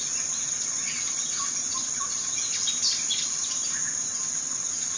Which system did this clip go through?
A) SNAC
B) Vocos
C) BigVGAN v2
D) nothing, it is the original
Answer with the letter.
D